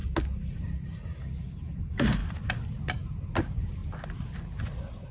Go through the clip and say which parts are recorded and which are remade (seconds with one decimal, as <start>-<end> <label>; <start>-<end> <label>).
0.0-1.8 recorded; 1.8-2.2 remade; 2.2-2.7 recorded; 2.7-3.8 remade; 3.8-5.1 recorded